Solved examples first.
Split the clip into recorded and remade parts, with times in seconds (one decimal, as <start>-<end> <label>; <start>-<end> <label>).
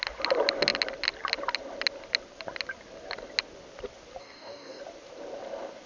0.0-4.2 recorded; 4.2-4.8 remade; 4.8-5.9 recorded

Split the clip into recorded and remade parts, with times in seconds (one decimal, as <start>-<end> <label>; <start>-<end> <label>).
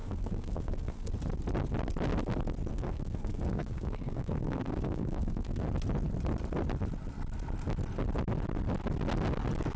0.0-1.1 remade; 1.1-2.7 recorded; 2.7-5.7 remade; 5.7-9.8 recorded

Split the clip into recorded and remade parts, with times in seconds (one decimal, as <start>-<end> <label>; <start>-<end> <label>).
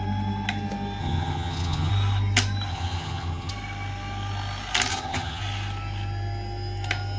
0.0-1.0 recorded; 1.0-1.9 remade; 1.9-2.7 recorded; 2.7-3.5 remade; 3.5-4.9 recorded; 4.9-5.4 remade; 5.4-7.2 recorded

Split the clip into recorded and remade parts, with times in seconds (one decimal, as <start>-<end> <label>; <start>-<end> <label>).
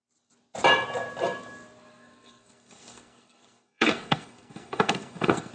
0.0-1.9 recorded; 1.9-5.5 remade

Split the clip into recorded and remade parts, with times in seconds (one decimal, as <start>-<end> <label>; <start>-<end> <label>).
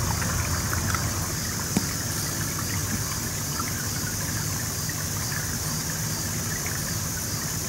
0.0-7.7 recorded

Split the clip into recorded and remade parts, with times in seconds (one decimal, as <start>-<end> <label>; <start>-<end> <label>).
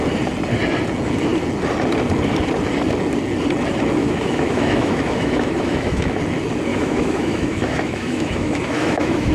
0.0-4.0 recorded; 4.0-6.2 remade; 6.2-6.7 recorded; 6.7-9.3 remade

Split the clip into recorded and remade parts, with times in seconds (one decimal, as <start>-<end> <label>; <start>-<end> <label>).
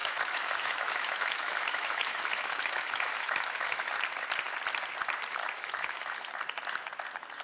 0.0-4.0 remade; 4.0-5.4 recorded; 5.4-6.3 remade; 6.3-7.4 recorded